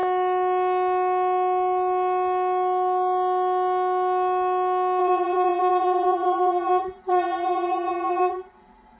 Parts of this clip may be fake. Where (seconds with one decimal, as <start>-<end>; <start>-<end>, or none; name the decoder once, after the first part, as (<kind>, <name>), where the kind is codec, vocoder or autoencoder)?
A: 5.0-9.0 (vocoder, Vocos)